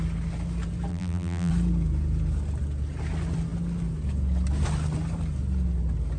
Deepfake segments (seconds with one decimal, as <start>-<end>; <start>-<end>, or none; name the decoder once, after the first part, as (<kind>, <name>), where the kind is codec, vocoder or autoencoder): 0.9-1.5 (vocoder, BigVGAN v2)